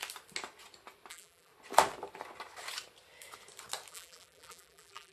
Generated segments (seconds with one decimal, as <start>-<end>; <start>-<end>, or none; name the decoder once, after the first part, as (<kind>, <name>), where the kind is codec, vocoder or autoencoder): 1.1-1.5 (vocoder, BigVGAN v2); 3.9-5.1